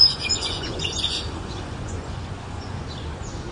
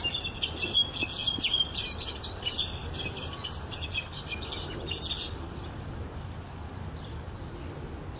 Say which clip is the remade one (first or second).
first